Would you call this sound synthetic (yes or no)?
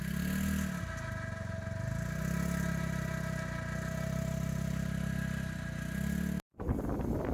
no